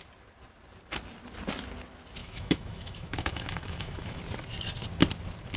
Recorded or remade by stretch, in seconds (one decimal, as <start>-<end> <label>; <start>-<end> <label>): 0.0-2.2 recorded; 2.2-4.2 remade; 4.2-5.6 recorded